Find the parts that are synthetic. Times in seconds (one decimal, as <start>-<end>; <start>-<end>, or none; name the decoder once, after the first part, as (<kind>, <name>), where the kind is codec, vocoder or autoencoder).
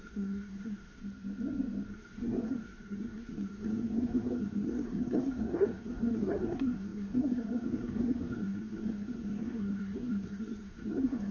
0.0-1.0 (codec, SNAC); 1.9-11.3